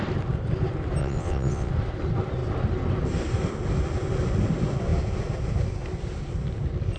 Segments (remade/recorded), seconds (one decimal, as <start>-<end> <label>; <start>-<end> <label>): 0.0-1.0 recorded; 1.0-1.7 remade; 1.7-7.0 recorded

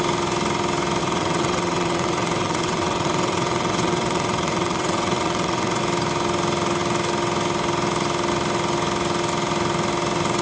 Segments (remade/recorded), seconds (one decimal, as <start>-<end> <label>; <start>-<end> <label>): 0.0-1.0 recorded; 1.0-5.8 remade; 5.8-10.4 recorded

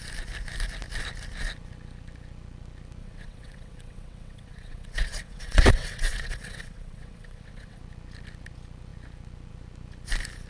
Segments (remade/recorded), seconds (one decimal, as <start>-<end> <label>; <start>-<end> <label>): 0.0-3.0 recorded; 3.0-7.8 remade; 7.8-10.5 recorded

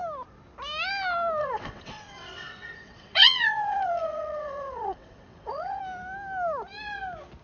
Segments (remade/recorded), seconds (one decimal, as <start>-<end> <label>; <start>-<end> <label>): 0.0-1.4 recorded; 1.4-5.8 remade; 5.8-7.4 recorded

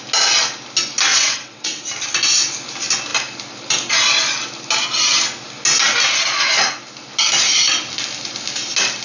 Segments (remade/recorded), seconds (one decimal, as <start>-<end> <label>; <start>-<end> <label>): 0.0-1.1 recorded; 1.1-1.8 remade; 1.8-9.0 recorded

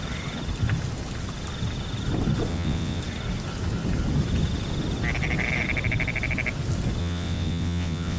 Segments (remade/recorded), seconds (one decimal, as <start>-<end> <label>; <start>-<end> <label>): 0.0-2.5 recorded; 2.5-3.0 remade; 3.0-7.0 recorded; 7.0-8.2 remade

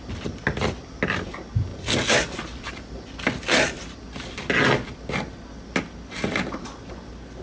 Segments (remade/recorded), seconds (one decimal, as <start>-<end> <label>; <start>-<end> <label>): 0.0-7.4 recorded